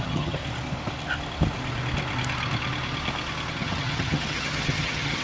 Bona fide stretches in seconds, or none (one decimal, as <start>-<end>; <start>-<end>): 0.4-3.5